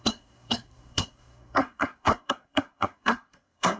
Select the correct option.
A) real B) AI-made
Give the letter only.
B